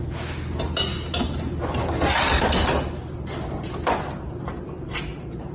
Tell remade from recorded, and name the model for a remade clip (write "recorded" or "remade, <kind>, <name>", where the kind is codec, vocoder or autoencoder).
recorded